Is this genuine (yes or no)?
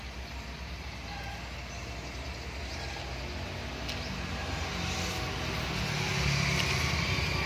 yes